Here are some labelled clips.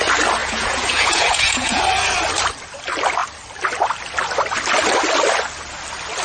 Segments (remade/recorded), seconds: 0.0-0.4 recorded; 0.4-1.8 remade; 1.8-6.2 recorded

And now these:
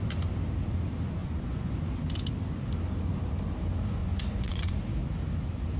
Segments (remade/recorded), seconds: 0.0-1.2 recorded; 1.2-1.7 remade; 1.7-4.0 recorded; 4.0-4.7 remade; 4.7-5.8 recorded

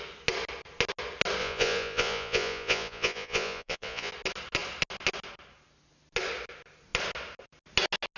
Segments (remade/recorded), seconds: 0.0-1.4 recorded; 1.4-4.1 remade; 4.1-8.2 recorded

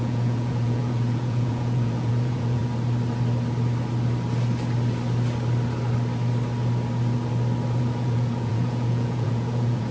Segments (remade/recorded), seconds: 0.0-2.6 remade; 2.6-7.8 recorded; 7.8-9.9 remade

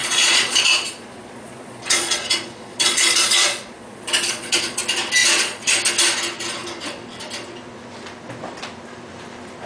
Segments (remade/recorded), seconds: 0.0-4.8 remade; 4.8-5.2 recorded; 5.2-5.7 remade; 5.7-9.7 recorded

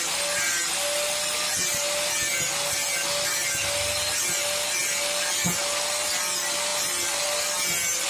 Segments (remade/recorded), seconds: 0.0-8.1 recorded